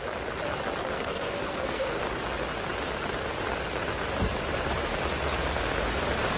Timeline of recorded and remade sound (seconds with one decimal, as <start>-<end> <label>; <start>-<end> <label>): 0.0-0.8 recorded; 0.8-2.0 remade; 2.0-6.4 recorded